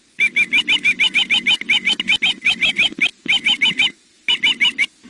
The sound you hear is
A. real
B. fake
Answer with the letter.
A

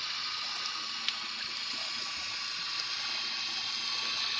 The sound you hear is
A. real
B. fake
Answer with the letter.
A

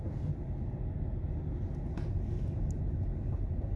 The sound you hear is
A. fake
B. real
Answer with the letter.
B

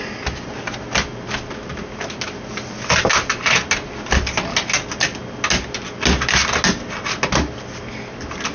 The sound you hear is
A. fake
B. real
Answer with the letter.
B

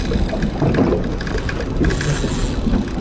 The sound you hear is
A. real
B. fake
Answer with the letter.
A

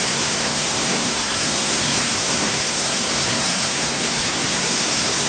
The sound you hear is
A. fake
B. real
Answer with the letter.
A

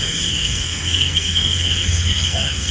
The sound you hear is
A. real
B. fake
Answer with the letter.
B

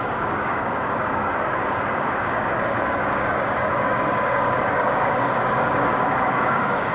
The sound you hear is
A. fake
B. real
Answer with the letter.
A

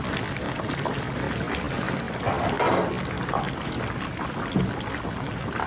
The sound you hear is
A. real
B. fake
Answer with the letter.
A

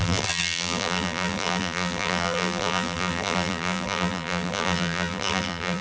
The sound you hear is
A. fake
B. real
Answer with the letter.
A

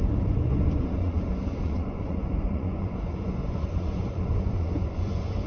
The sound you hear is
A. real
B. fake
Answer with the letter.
B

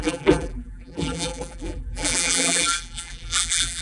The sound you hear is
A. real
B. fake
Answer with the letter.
B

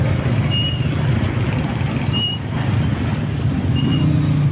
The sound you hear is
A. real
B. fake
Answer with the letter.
A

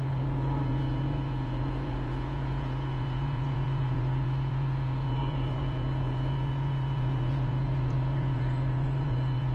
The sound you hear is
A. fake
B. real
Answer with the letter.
A